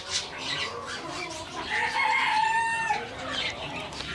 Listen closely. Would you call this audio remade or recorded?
remade